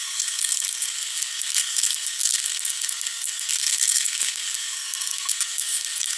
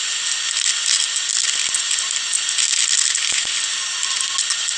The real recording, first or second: second